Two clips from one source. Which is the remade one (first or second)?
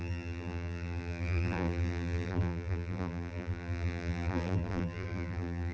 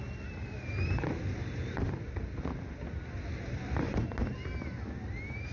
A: first